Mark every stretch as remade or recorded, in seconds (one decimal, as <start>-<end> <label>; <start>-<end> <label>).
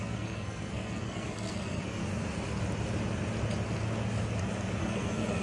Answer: 0.0-2.0 remade; 2.0-4.8 recorded; 4.8-5.4 remade